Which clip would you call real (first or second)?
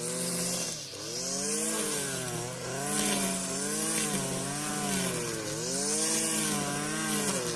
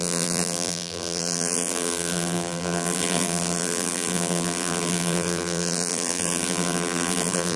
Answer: first